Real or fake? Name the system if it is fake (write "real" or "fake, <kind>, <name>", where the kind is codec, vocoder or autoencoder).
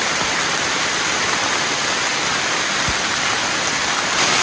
real